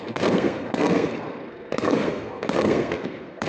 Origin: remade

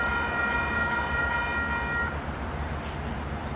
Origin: recorded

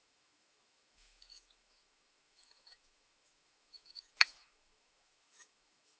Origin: remade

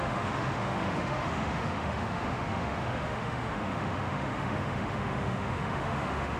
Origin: remade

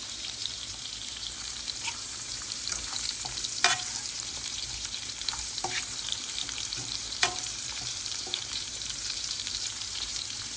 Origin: remade